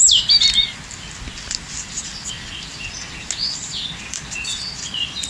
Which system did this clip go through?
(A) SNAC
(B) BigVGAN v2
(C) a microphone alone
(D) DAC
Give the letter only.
C